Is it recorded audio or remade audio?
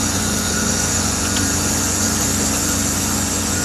remade